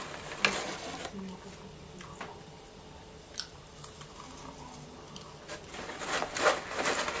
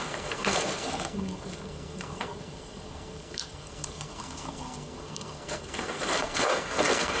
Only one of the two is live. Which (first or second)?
first